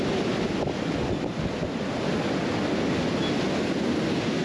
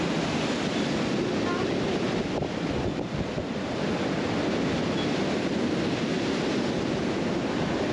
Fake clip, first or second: second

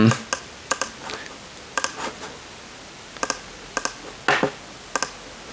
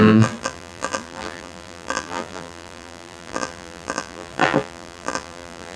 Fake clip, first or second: second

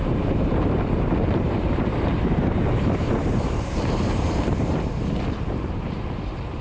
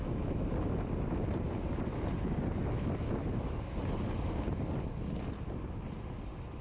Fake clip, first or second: first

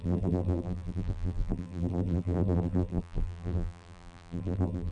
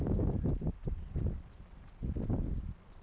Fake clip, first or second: first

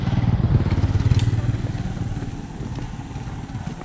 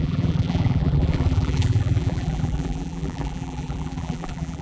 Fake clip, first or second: second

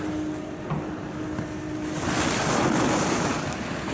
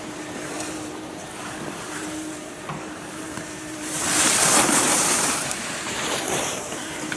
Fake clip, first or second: second